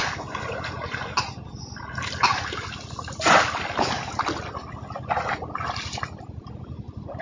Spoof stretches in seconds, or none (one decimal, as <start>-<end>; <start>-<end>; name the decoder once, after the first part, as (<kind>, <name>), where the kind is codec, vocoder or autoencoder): none